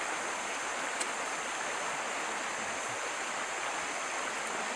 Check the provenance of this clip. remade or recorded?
recorded